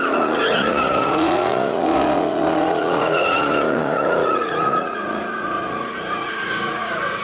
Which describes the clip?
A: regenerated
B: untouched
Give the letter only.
A